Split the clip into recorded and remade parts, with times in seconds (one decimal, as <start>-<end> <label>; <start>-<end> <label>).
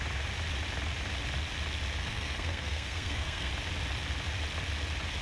0.0-2.0 recorded; 2.0-3.5 remade; 3.5-5.2 recorded